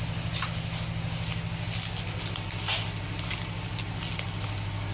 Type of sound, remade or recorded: recorded